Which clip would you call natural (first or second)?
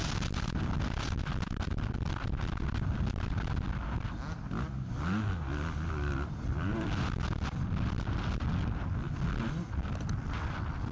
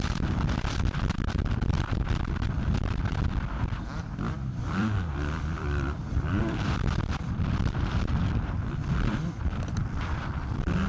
first